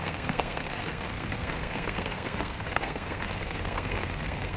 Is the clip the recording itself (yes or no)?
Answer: no